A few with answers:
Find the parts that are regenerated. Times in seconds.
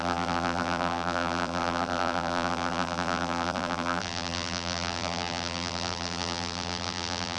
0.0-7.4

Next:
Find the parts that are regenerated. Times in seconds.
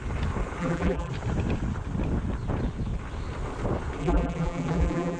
0.6-1.1; 4.0-5.2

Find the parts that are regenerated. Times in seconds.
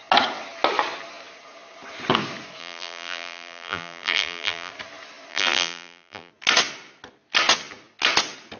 2.6-4.7; 5.3-6.3